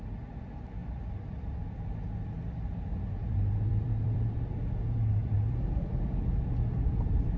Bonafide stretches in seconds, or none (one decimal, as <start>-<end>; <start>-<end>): 0.0-3.2; 4.3-5.2